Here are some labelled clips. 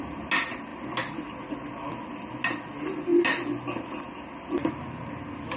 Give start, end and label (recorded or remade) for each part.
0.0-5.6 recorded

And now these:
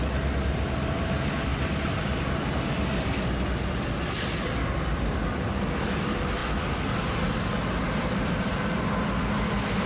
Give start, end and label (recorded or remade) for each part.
0.0-1.5 recorded; 1.5-2.2 remade; 2.2-9.9 recorded

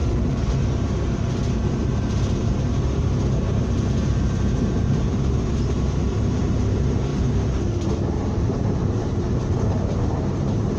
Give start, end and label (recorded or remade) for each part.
0.0-0.8 recorded; 0.8-10.8 remade

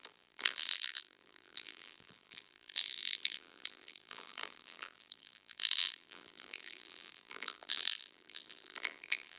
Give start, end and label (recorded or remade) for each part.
0.0-9.4 remade

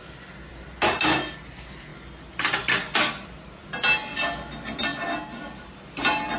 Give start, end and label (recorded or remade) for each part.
0.0-6.4 recorded

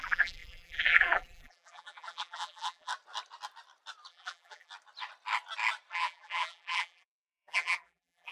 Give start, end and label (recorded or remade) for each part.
0.0-2.9 remade; 2.9-4.1 recorded; 4.1-4.7 remade; 4.7-5.9 recorded; 5.9-8.3 remade

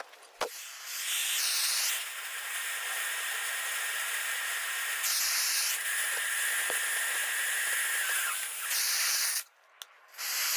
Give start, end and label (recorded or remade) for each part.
0.0-10.6 recorded